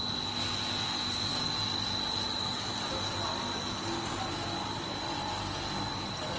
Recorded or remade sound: recorded